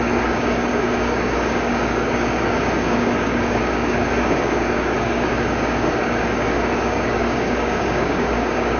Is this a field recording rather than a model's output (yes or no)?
no